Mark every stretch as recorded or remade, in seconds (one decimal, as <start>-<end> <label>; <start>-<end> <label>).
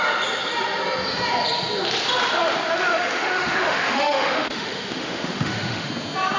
0.0-2.9 recorded; 2.9-5.9 remade; 5.9-6.4 recorded